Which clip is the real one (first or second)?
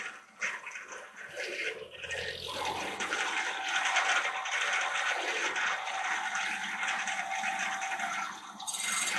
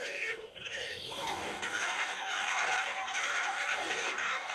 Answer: first